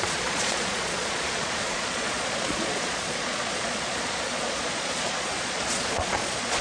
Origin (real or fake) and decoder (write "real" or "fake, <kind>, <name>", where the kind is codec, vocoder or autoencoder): fake, vocoder, Vocos